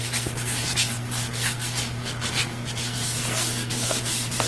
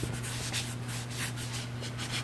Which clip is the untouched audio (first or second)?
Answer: second